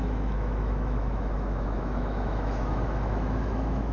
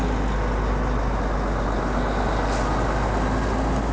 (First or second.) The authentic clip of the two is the second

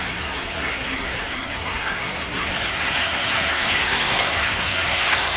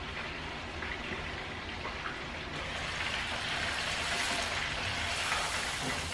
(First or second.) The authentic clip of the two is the second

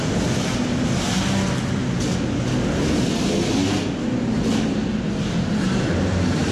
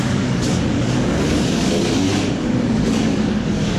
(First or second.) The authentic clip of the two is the first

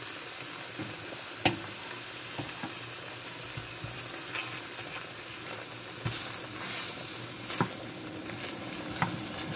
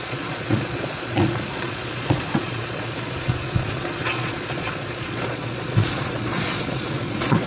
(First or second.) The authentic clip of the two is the first